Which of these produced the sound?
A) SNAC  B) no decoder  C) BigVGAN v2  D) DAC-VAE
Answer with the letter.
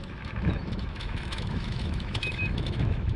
D